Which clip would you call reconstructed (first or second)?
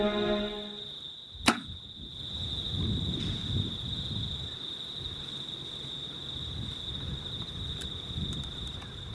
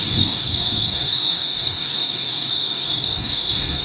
second